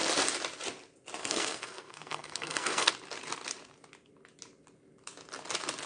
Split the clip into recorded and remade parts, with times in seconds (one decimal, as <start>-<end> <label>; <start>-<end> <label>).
0.0-1.2 recorded; 1.2-2.9 remade; 2.9-5.9 recorded